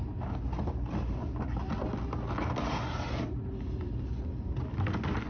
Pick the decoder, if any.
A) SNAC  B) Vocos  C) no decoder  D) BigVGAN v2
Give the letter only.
C